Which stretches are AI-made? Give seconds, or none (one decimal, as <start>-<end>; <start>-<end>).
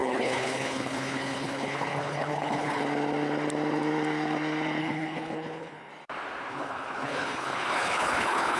0.0-2.8; 4.8-5.9; 6.5-8.6